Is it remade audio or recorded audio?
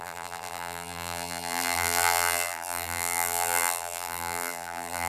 remade